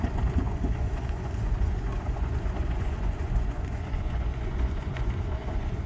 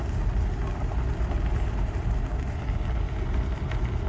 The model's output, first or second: first